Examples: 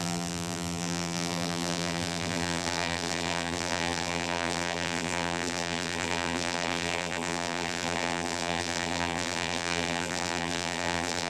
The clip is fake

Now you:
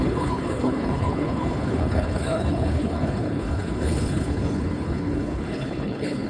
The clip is fake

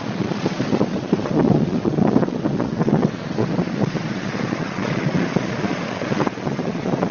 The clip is fake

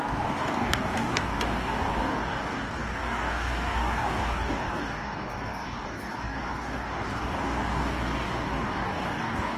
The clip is fake